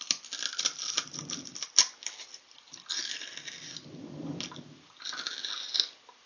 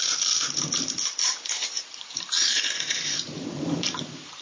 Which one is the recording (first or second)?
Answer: first